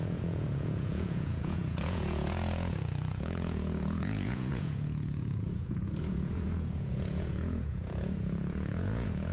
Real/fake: fake